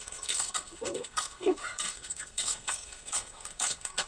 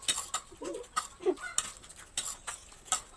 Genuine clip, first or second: second